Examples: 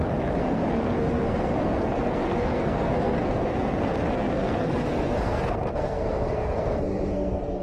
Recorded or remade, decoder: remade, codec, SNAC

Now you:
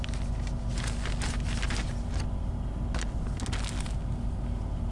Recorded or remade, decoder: recorded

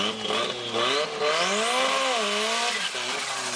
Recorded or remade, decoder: recorded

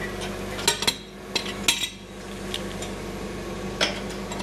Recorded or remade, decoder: recorded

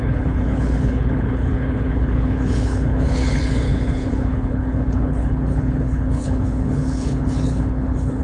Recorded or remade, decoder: remade, codec, HILCodec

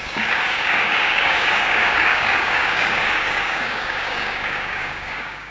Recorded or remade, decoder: remade, codec, DAC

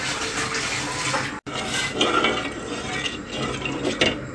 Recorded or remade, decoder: recorded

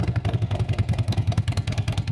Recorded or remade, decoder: remade, codec, SNAC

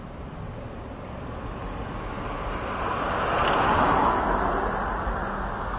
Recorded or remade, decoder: recorded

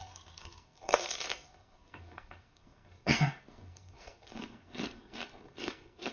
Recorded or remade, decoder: remade, codec, SNAC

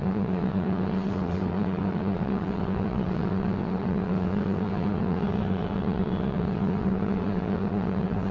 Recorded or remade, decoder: remade, vocoder, WaveNeXt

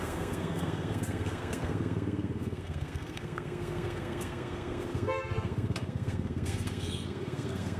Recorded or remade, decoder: remade, codec, SNAC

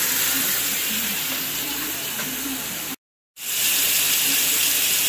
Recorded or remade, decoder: recorded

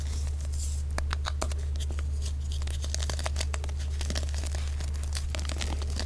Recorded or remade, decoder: recorded